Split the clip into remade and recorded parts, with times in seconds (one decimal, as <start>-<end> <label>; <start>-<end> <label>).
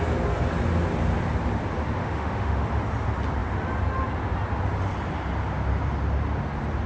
0.0-2.0 recorded; 2.0-2.7 remade; 2.7-6.9 recorded